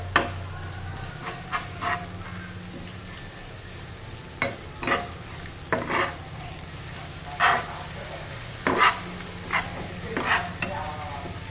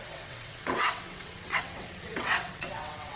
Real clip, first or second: first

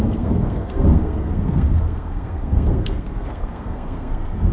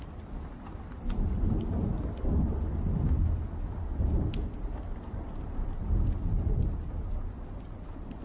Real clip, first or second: second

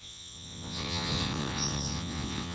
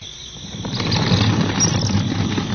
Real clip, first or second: second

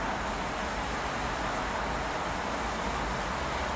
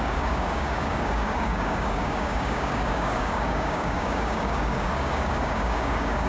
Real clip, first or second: first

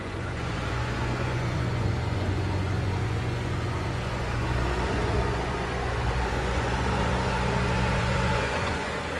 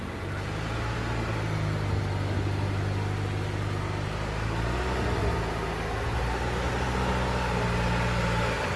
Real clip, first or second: second